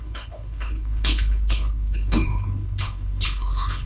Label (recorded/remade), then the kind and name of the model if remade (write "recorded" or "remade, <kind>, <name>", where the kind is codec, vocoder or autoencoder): remade, codec, HILCodec